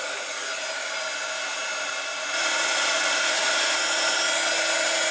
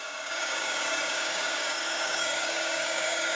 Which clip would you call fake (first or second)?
second